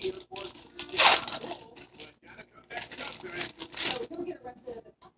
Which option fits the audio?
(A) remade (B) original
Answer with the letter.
B